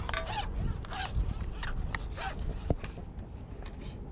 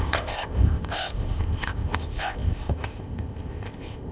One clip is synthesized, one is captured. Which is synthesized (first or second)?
second